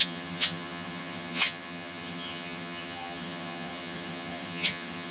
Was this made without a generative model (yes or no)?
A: no